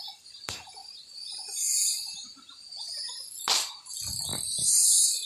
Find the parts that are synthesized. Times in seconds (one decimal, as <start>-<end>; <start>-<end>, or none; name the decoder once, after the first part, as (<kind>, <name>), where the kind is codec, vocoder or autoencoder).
4.3-5.3 (vocoder, BigVGAN v2)